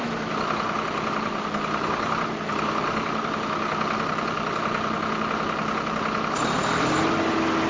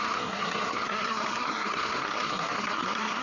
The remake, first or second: second